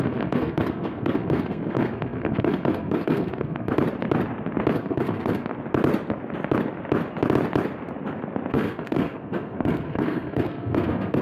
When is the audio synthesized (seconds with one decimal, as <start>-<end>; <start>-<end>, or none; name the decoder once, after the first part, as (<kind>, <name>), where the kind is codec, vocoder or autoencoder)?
0.0-3.7 (codec, SNAC); 4.7-5.5; 8.5-11.2